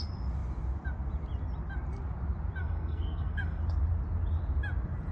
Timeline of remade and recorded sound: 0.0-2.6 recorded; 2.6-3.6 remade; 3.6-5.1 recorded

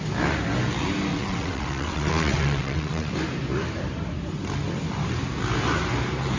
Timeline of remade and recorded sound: 0.0-1.1 recorded; 1.1-3.1 remade; 3.1-6.4 recorded

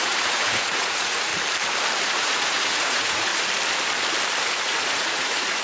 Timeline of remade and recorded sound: 0.0-1.3 remade; 1.3-2.0 recorded; 2.0-3.3 remade; 3.3-4.5 recorded; 4.5-5.6 remade

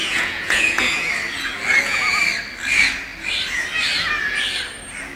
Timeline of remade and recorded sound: 0.0-1.1 remade; 1.1-1.7 recorded; 1.7-2.2 remade; 2.2-5.2 recorded